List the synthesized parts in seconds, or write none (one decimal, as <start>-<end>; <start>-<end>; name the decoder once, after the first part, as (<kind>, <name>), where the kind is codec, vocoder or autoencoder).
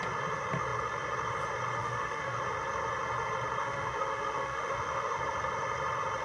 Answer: 1.8-2.4 (autoencoder, DAC-VAE); 3.6-5.2